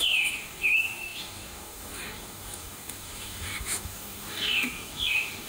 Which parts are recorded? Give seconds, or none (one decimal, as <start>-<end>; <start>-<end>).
none